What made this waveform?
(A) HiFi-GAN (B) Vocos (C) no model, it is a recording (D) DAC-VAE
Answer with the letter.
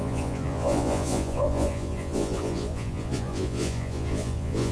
B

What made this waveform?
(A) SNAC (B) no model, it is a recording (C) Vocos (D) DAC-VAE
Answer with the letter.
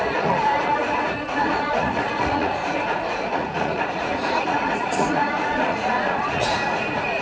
C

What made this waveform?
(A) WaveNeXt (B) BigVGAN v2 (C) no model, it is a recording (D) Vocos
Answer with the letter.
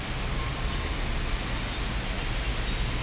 C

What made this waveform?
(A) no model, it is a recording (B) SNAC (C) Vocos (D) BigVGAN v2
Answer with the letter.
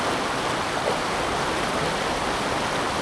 A